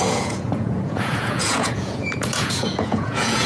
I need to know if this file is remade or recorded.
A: remade